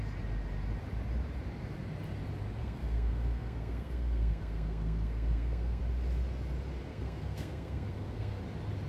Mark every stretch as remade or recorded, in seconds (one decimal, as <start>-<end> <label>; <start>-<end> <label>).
0.0-2.6 recorded; 2.6-5.8 remade; 5.8-6.9 recorded; 6.9-8.4 remade; 8.4-8.9 recorded